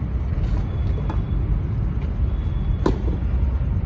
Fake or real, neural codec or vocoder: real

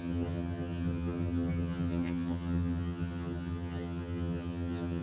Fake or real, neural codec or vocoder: fake, vocoder, HiFi-GAN